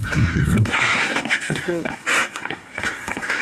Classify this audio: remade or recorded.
remade